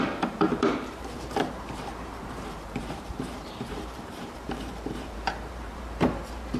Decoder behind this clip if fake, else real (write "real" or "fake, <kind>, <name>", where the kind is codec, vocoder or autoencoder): fake, vocoder, BigVGAN v2